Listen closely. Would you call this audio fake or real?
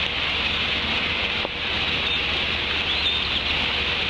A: real